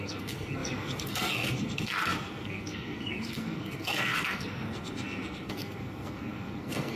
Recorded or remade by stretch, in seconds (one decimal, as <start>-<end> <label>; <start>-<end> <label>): 0.0-7.0 remade

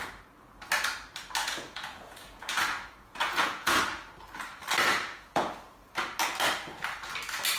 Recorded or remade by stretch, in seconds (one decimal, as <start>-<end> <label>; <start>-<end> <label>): 0.0-1.4 recorded; 1.4-3.8 remade; 3.8-4.9 recorded; 4.9-5.5 remade; 5.5-7.6 recorded

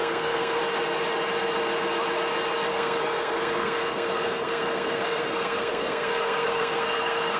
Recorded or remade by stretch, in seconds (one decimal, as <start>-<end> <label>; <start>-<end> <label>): 0.0-0.6 remade; 0.6-2.7 recorded; 2.7-7.4 remade

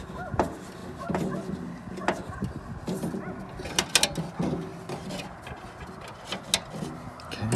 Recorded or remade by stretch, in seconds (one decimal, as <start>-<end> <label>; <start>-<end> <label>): 0.0-7.6 recorded